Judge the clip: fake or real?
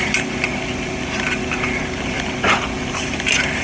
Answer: real